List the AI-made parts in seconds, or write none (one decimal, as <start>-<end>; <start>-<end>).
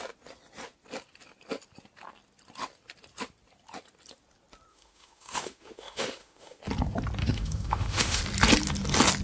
4.7-6.6; 7.2-8.2